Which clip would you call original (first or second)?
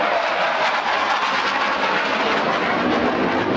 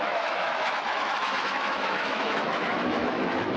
first